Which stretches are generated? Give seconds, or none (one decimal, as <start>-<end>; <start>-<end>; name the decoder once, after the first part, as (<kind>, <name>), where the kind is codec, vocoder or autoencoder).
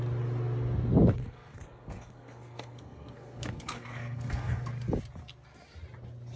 1.2-4.7 (codec, SNAC)